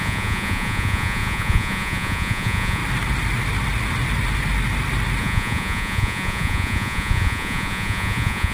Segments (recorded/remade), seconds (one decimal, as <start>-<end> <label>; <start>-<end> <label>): 0.0-2.8 remade; 2.8-5.2 recorded; 5.2-8.5 remade